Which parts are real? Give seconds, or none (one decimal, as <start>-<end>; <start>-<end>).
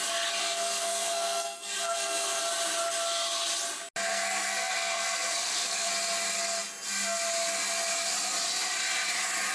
0.0-0.4; 2.4-4.1; 5.9-9.5